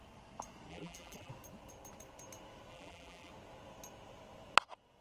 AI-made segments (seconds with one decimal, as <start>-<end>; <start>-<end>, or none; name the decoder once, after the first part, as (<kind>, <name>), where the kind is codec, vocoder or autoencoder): 0.7-1.3 (vocoder, BigVGAN v2); 2.7-3.3